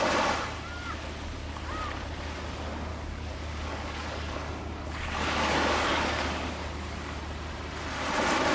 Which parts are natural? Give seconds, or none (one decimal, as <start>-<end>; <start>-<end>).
0.0-2.9; 7.2-8.5